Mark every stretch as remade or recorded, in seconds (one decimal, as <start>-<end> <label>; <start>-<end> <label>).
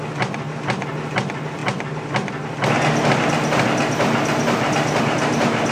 0.0-5.7 recorded